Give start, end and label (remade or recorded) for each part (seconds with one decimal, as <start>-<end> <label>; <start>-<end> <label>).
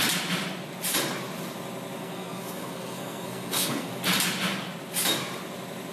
0.0-2.0 recorded; 2.0-3.9 remade; 3.9-5.9 recorded